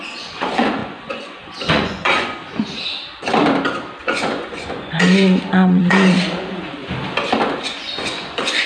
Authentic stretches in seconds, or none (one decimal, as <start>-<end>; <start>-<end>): 2.4-4.0; 6.8-7.6